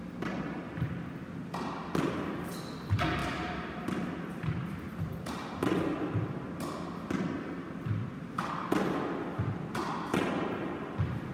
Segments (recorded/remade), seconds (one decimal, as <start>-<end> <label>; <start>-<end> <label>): 0.0-11.3 recorded